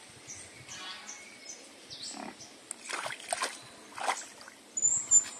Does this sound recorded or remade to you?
recorded